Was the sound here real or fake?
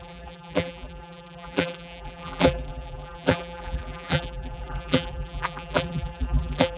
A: fake